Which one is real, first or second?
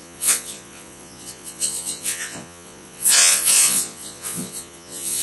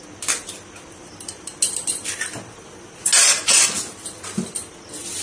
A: second